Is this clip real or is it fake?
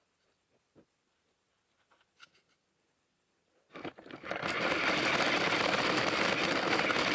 real